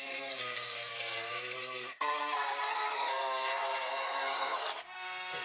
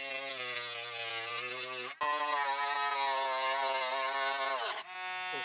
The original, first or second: second